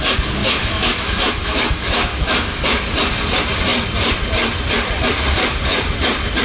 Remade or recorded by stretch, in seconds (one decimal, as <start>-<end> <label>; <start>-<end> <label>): 0.0-0.4 recorded; 0.4-2.8 remade; 2.8-6.4 recorded